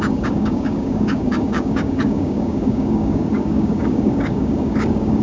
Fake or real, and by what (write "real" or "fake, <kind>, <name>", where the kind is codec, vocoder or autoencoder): fake, codec, DAC